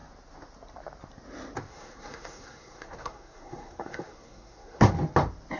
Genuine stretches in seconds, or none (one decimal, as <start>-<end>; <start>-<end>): 0.0-1.7; 4.9-5.6